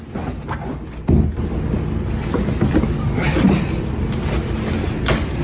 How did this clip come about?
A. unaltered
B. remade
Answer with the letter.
A